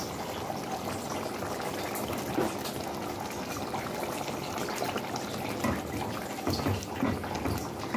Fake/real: real